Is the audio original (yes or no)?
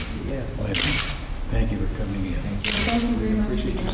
yes